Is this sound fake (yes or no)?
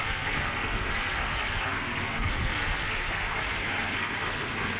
yes